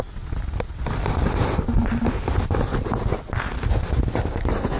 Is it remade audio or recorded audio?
recorded